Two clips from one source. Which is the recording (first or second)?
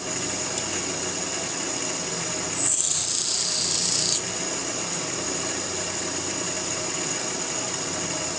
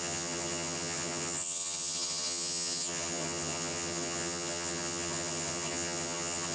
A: first